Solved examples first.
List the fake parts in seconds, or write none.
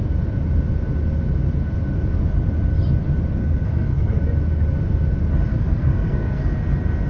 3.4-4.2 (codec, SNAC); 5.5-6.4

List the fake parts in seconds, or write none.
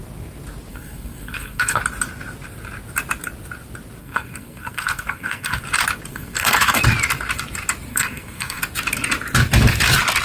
0.7-1.8 (codec, SNAC); 4.0-5.6; 6.1-6.8; 7.9-8.6